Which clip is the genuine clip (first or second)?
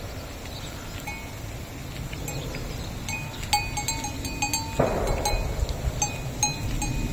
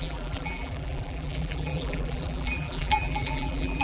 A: first